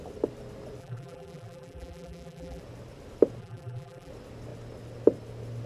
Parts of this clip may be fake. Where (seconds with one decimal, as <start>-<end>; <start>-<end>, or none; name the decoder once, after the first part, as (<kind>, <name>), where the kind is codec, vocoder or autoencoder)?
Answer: 0.8-2.6 (vocoder, BigVGAN v2); 3.4-4.1